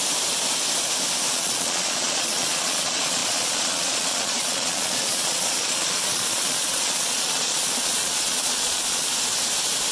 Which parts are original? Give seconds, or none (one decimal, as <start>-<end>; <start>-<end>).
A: 0.0-1.3; 9.1-9.9